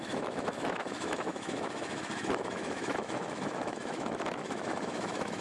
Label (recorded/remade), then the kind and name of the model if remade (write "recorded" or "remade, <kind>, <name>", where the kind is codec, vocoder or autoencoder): remade, autoencoder, DAC-VAE